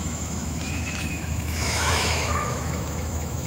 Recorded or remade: remade